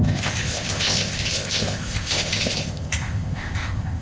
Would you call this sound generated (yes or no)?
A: yes